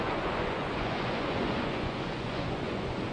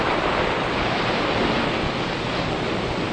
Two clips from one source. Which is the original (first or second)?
second